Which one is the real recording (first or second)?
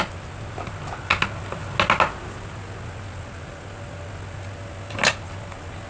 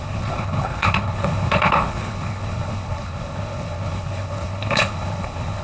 first